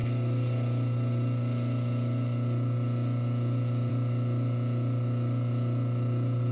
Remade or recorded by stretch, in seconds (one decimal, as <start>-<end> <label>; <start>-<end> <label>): 0.0-6.5 recorded